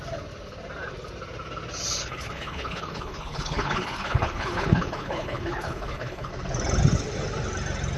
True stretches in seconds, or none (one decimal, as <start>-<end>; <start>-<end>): 0.0-2.0; 6.3-8.0